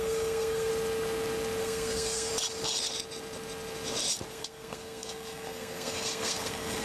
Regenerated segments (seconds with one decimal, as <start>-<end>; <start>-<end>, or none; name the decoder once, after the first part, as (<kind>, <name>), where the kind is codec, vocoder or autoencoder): 0.0-0.7 (codec, SNAC); 1.6-2.3; 4.3-6.8

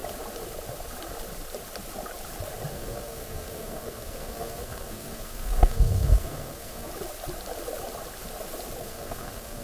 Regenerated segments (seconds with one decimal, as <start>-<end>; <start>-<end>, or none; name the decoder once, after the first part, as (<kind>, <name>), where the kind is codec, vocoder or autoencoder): 2.7-6.9 (codec, SNAC); 8.8-9.6

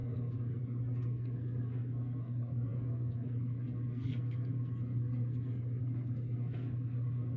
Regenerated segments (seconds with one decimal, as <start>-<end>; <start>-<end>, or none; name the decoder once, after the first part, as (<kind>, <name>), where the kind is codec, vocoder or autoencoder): 0.0-7.4 (codec, SNAC)

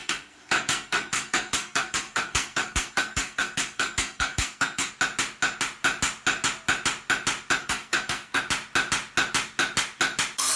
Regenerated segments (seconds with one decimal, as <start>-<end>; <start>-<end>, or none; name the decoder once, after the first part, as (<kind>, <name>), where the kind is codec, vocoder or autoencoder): 0.0-4.9 (codec, SNAC); 7.6-8.4

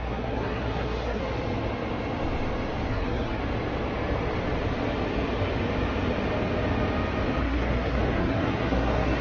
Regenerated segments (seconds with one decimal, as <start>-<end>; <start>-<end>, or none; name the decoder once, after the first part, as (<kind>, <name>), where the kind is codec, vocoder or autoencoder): 0.0-1.2 (codec, SNAC); 2.9-3.4; 7.4-9.2

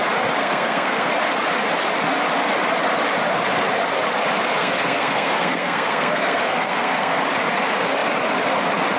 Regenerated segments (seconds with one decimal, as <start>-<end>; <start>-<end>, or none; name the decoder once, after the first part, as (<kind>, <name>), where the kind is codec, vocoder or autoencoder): 0.4-1.1 (codec, SNAC); 4.6-7.2